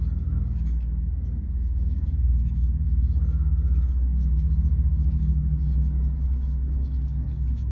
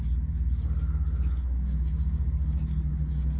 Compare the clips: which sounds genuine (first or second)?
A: second